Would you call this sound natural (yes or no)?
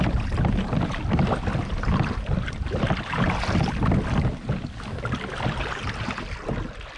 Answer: yes